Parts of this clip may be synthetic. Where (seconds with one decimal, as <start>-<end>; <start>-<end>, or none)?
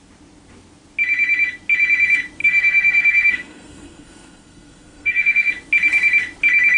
2.4-5.5